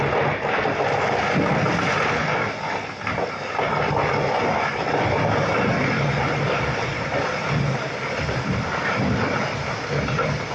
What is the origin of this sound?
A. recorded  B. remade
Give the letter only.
A